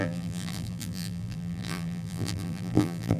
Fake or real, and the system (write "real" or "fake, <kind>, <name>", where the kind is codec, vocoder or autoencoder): fake, vocoder, BigVGAN v2